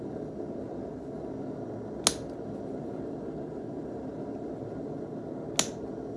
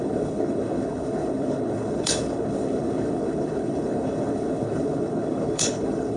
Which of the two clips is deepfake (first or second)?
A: second